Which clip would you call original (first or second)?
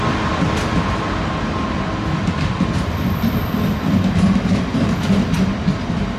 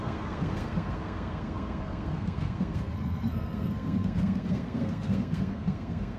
first